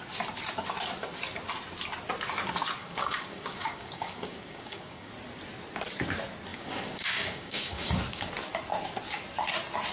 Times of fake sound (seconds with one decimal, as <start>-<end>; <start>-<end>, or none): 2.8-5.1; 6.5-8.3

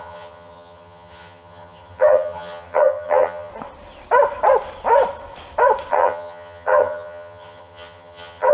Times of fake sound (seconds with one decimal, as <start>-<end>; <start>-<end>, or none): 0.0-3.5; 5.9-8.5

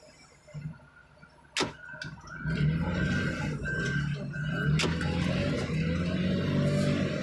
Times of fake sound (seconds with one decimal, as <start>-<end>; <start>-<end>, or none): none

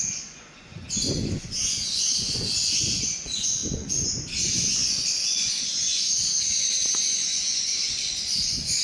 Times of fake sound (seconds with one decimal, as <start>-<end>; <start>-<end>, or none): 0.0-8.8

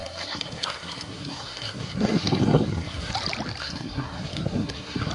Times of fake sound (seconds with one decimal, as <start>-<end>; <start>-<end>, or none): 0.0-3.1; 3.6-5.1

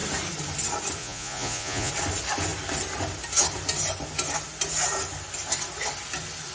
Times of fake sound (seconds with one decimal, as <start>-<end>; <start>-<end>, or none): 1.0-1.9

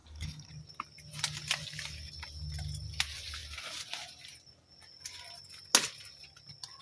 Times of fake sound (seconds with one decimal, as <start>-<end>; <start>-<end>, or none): 0.0-0.5

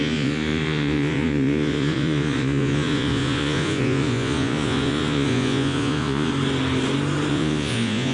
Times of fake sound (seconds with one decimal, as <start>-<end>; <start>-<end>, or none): 0.0-6.3; 7.3-8.1